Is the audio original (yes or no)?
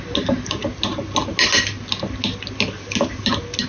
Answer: yes